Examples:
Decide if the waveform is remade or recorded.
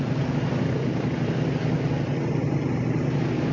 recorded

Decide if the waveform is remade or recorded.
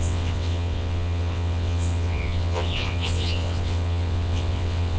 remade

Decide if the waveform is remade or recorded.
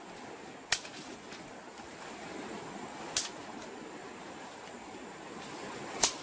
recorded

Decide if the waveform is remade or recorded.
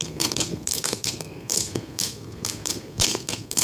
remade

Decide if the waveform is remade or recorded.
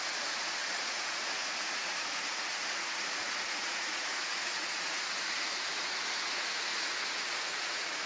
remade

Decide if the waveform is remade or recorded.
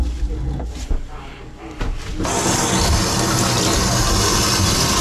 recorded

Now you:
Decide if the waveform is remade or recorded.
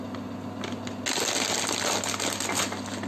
recorded